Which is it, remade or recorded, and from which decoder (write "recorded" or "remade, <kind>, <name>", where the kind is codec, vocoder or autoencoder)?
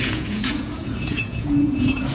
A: remade, vocoder, Vocos